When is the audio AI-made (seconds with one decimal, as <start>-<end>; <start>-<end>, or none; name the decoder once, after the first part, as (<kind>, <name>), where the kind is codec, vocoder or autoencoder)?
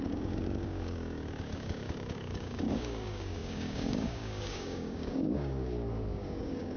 0.0-6.8 (codec, DAC)